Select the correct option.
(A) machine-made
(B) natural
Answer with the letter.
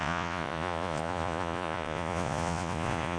A